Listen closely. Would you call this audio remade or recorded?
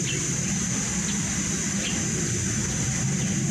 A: recorded